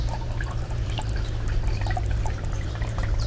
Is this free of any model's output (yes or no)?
no